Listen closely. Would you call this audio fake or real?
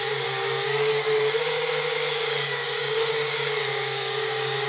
fake